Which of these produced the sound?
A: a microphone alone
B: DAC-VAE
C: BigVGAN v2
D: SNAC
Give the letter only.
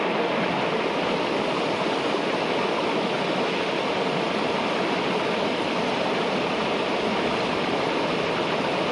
A